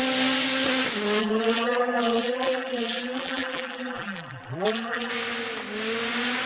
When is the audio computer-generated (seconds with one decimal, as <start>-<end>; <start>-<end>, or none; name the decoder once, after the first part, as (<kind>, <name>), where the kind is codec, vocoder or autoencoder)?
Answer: 1.2-5.1 (vocoder, BigVGAN v2)

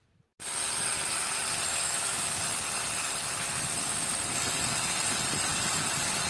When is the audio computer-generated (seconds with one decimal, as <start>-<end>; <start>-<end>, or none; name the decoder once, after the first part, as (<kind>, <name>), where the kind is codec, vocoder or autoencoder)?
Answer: 1.7-2.4 (autoencoder, DAC-VAE)

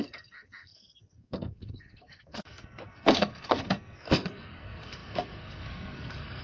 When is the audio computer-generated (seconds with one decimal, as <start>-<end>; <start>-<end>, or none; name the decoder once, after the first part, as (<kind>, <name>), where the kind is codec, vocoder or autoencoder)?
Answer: 0.0-6.4 (codec, SNAC)

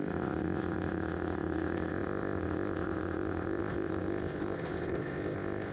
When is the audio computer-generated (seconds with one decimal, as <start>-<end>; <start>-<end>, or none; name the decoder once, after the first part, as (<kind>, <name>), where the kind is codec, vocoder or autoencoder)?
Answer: 0.0-5.7 (codec, ZipCodec)

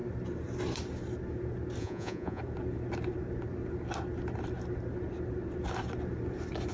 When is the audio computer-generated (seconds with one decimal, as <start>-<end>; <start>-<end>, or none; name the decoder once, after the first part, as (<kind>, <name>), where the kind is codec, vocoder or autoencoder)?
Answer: 1.8-2.4 (vocoder, Vocos)

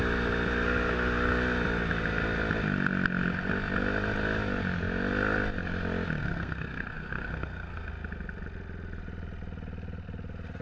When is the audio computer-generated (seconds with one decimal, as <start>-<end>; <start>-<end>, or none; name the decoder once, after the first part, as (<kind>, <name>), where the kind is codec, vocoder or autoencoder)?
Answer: 6.2-7.9 (codec, SNAC)